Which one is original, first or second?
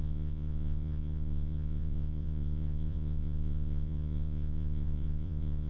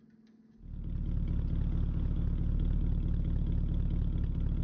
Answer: second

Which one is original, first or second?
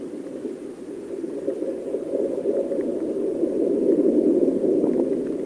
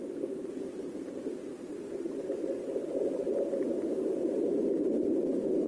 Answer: first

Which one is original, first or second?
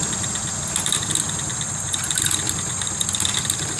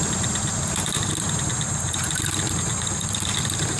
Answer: first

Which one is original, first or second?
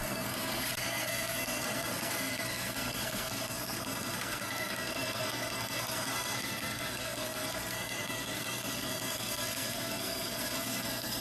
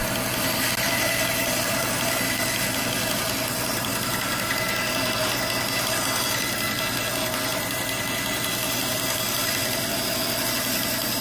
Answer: second